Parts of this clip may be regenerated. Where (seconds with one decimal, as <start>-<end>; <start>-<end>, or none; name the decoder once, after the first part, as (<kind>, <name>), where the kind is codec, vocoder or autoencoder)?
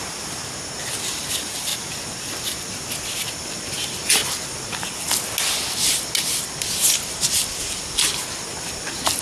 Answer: none